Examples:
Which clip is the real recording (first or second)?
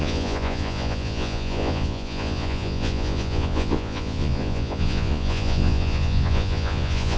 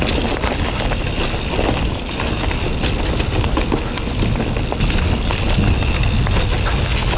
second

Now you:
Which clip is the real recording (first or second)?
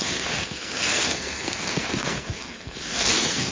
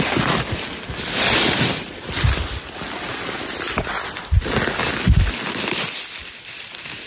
second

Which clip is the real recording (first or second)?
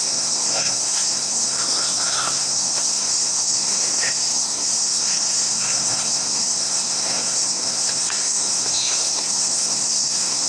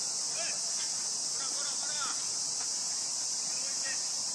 second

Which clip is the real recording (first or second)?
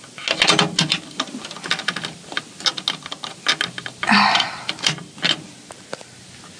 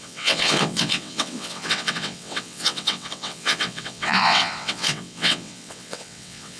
first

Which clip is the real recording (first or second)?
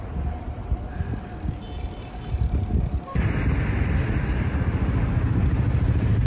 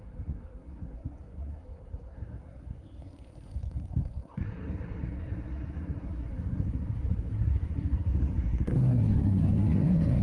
first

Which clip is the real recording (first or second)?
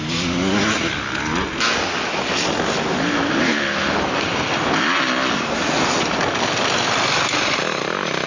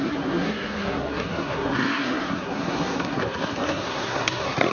first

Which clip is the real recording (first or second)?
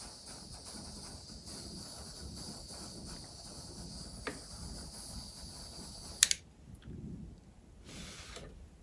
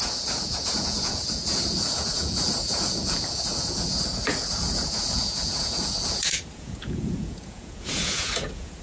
first